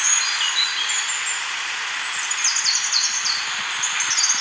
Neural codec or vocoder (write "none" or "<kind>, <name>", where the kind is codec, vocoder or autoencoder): none